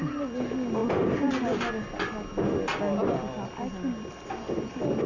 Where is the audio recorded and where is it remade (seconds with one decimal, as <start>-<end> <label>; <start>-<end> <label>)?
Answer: 0.0-5.1 recorded